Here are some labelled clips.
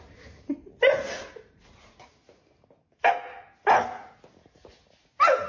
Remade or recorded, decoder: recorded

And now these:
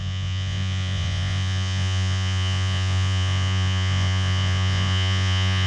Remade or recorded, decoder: remade, vocoder, Vocos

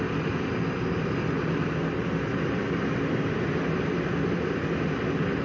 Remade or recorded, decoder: recorded